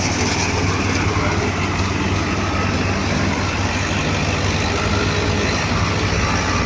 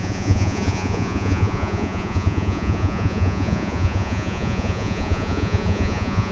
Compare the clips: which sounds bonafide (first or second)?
first